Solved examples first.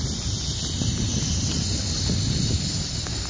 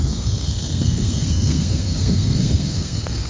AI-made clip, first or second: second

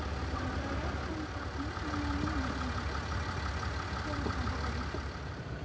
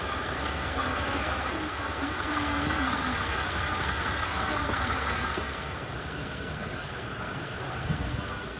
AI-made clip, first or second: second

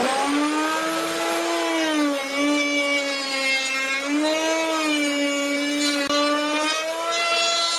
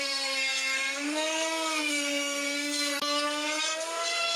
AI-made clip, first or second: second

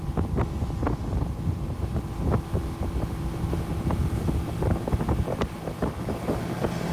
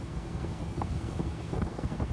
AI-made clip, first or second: second